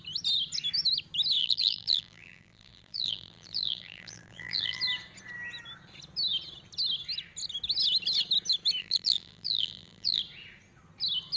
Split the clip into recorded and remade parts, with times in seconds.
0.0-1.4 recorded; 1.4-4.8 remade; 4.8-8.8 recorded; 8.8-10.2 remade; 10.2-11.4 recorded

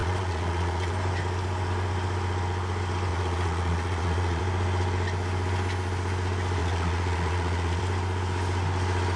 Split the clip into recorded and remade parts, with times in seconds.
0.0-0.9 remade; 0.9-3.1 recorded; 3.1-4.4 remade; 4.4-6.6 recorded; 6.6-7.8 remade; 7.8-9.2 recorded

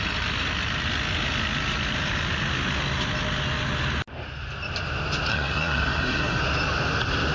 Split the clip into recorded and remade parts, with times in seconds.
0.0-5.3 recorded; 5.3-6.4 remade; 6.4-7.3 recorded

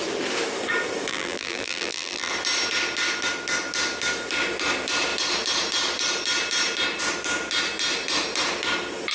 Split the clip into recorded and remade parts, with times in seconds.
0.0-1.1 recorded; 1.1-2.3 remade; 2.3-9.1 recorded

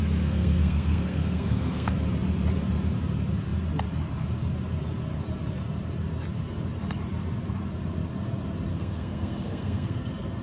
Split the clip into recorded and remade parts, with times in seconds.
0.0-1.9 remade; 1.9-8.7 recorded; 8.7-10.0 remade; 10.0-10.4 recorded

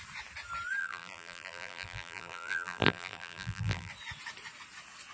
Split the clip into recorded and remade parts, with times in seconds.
0.0-0.8 recorded; 0.8-3.9 remade; 3.9-5.1 recorded

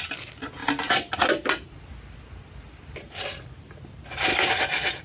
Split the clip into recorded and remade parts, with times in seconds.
0.0-5.0 recorded